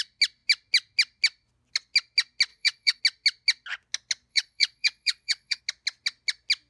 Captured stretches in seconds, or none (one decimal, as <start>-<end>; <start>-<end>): 0.0-2.5; 3.0-4.3; 5.6-6.7